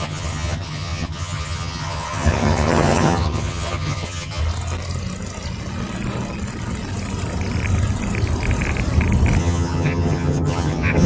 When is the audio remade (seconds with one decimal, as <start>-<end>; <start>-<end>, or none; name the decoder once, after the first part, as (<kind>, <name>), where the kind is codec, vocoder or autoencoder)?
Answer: 0.0-4.4 (vocoder, HiFi-GAN); 9.4-11.1